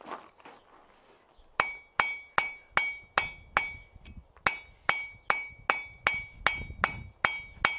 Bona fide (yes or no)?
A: yes